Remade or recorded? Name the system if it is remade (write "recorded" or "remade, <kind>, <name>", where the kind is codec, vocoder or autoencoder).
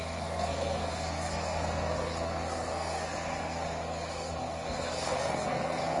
remade, codec, SNAC